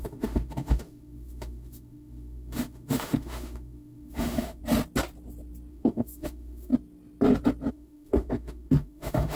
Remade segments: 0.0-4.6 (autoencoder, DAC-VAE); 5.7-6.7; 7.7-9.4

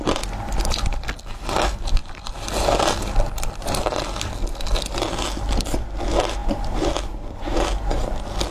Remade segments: none

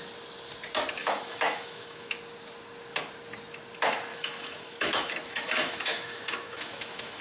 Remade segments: 1.0-2.1 (autoencoder, DAC-VAE); 4.1-7.2

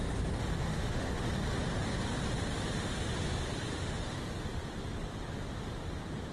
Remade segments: 0.7-1.2 (autoencoder, DAC-VAE); 3.7-4.2

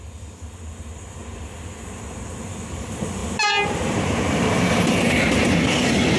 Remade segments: none

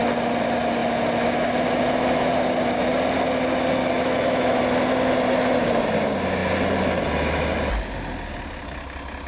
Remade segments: 3.8-4.6 (autoencoder, DAC-VAE)